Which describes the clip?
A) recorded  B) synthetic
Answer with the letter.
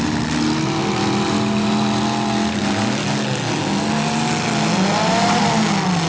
A